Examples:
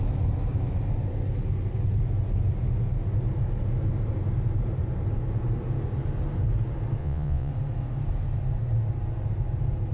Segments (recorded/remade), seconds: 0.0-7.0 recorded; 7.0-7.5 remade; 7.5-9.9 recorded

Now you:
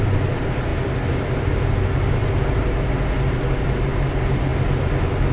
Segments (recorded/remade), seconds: 0.0-5.3 recorded

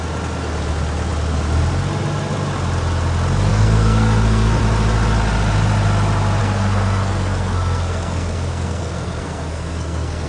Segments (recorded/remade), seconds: 0.0-3.5 recorded; 3.5-4.6 remade; 4.6-6.4 recorded; 6.4-10.3 remade